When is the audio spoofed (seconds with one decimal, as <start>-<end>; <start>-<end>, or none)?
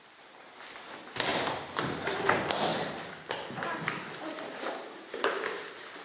none